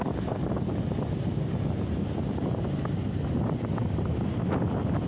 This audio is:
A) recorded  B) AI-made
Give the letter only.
A